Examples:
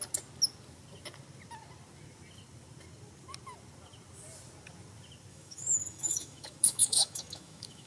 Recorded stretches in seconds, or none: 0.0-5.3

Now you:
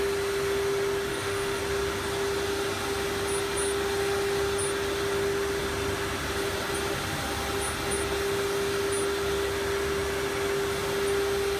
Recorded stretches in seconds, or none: 0.0-1.1; 1.6-11.6

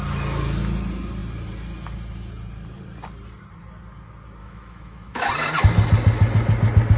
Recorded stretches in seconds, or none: 0.0-4.4; 5.3-7.0